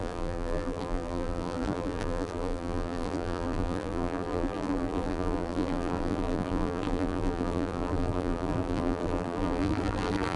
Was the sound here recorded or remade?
remade